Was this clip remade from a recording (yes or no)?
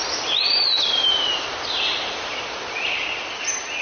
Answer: yes